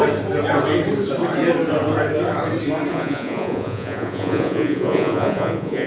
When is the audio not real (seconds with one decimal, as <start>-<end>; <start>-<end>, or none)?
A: 2.9-5.9